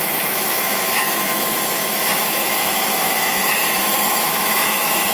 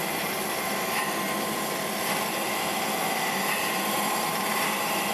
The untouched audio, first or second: second